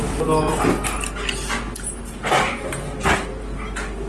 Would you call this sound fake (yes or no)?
no